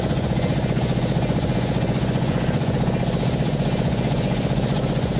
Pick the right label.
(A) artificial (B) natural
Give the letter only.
A